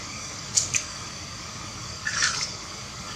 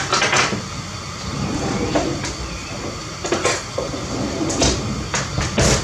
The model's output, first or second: first